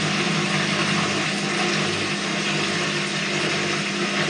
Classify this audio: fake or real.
real